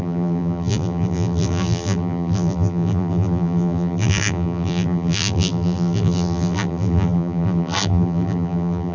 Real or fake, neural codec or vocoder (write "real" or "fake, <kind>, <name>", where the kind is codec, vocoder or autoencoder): fake, vocoder, BigVGAN v2